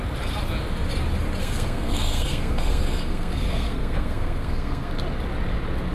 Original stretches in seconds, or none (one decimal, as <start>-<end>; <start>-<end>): 0.0-1.4; 4.9-5.9